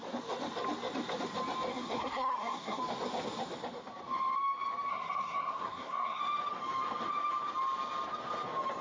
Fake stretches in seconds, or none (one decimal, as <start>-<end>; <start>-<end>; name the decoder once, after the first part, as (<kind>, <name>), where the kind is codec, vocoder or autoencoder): 1.7-2.8 (codec, SNAC); 4.9-6.2